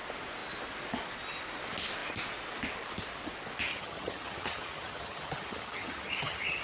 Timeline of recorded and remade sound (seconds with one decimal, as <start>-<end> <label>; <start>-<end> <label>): 0.0-3.7 recorded; 3.7-6.6 remade

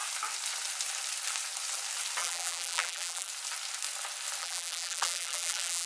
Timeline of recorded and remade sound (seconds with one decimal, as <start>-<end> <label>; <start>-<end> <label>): 0.0-2.2 recorded; 2.2-3.3 remade; 3.3-4.4 recorded; 4.4-5.9 remade